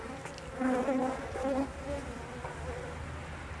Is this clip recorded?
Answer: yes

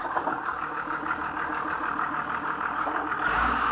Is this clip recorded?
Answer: no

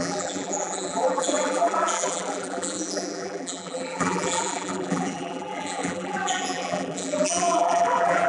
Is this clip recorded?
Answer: no